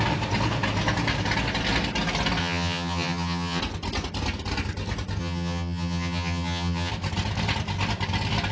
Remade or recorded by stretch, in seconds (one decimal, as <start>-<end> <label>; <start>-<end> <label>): 0.0-2.4 recorded; 2.4-3.6 remade; 3.6-5.2 recorded; 5.2-6.9 remade; 6.9-8.5 recorded